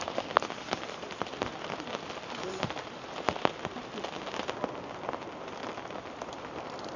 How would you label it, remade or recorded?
recorded